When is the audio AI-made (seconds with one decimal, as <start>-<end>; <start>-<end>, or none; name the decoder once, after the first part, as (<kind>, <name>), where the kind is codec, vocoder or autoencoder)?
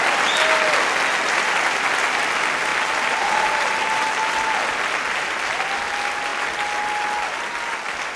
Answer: none